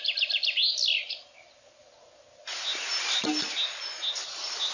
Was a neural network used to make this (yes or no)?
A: no